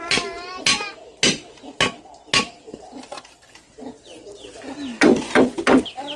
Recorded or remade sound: recorded